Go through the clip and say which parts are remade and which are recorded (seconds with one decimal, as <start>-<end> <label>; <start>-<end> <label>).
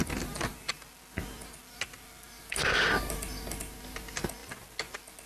0.0-5.3 recorded